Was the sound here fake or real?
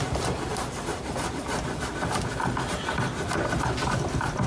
real